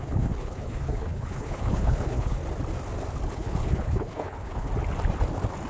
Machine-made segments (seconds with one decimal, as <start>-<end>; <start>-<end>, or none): 0.0-2.4; 3.3-4.7